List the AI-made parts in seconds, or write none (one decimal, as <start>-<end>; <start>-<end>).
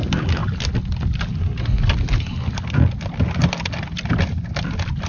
none